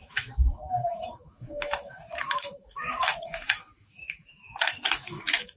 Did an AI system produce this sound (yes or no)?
yes